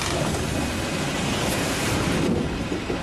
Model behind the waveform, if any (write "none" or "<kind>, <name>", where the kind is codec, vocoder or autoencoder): none